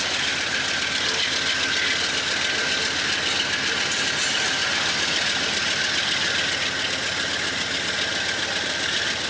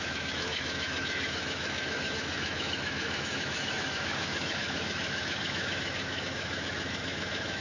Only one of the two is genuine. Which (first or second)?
first